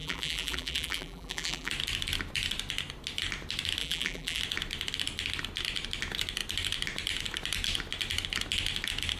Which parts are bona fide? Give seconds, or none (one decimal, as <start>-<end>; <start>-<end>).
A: 1.7-3.8; 4.4-9.2